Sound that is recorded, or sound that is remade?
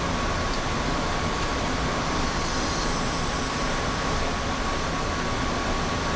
recorded